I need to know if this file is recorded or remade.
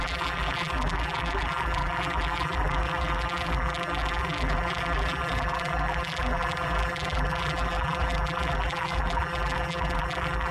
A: remade